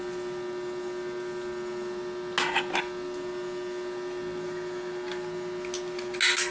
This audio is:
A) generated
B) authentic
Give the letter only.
B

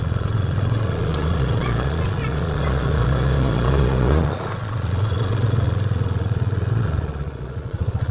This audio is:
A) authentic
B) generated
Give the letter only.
B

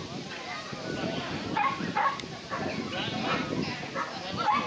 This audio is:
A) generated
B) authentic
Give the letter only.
B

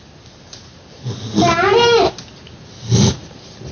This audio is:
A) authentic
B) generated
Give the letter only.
A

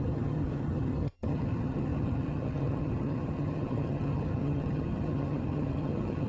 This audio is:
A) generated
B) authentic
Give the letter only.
A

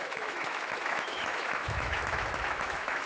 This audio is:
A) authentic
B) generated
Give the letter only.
B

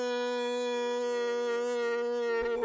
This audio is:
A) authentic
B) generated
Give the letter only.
A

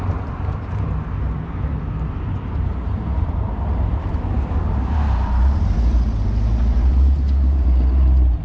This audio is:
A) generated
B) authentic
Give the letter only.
A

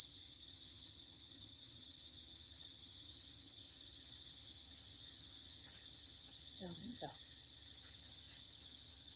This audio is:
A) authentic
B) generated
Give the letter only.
B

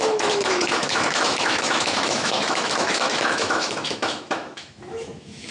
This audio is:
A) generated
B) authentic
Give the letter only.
A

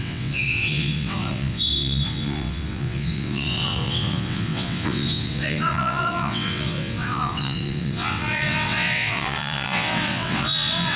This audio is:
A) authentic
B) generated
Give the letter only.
B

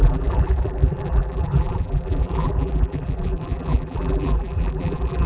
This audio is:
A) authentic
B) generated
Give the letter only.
B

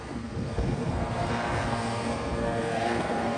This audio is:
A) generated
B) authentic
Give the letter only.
A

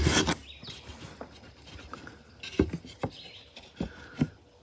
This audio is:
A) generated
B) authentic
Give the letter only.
B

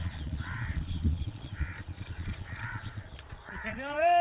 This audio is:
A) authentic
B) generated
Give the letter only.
B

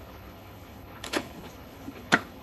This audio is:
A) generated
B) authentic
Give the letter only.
A